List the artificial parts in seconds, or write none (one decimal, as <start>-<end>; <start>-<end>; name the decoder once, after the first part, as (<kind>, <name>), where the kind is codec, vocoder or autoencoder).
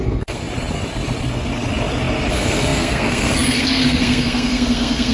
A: 0.0-0.4 (codec, SNAC); 2.3-5.1